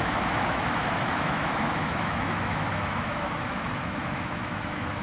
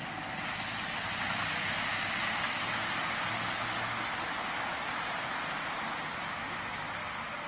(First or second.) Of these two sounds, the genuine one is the second